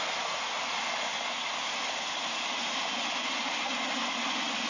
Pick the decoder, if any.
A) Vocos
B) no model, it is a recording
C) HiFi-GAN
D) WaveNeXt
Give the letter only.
B